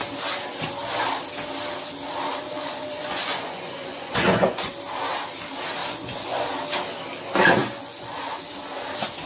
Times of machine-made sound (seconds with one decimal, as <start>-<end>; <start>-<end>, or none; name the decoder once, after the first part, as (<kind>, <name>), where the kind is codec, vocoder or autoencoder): 2.3-4.7 (vocoder, Vocos); 5.8-6.5; 7.6-8.4